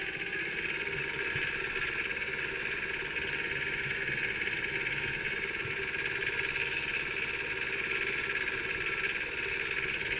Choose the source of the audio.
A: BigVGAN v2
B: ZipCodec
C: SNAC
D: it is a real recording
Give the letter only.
D